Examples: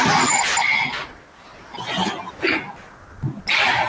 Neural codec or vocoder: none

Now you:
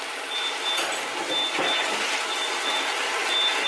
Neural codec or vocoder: none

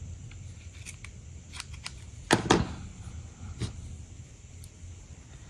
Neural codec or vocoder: none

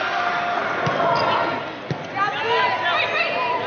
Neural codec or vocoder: none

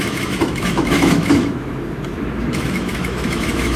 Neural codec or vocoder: autoencoder, DAC-VAE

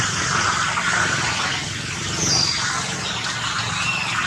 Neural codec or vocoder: none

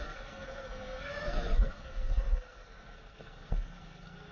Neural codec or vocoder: codec, SNAC